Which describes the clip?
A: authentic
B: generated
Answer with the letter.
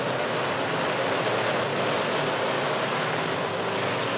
A